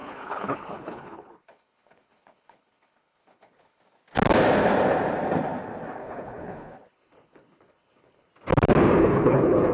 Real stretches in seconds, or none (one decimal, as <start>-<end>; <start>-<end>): 3.8-6.0; 8.3-9.0